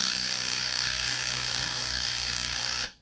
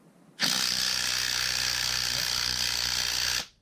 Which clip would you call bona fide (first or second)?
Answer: second